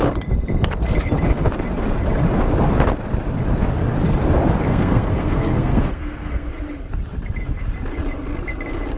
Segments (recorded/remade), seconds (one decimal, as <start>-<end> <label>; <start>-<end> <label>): 0.0-4.7 recorded; 4.7-6.5 remade; 6.5-9.0 recorded